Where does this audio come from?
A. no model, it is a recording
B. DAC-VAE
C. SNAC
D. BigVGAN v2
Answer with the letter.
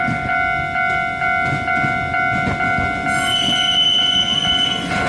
A